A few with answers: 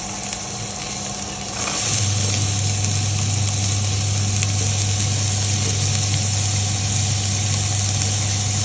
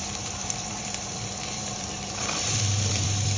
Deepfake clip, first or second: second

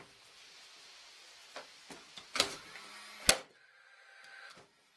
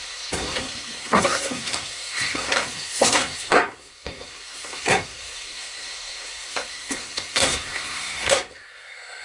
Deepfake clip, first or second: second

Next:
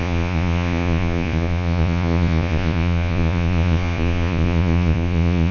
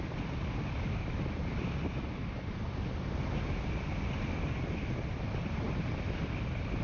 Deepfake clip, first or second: first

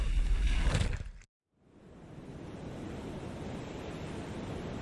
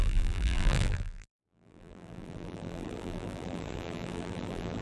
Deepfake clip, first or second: second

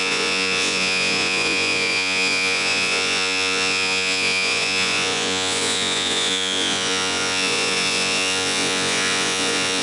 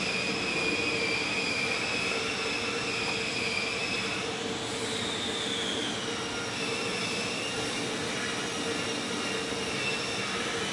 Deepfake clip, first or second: first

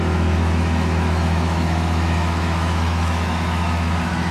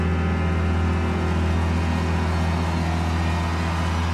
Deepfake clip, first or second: first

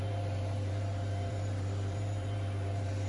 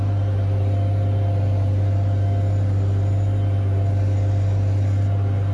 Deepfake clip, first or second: first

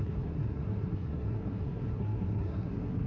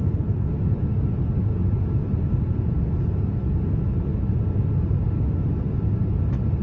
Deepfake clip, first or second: first